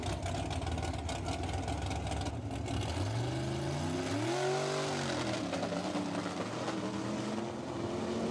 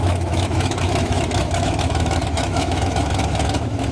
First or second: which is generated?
second